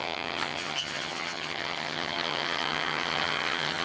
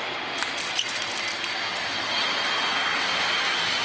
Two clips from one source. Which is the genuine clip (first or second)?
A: second